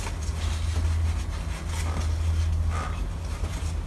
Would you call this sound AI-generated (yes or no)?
no